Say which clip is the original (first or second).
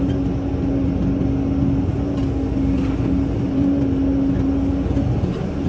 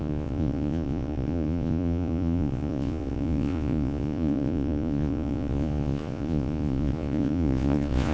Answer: first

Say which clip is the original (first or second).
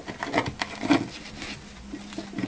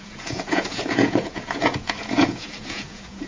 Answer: first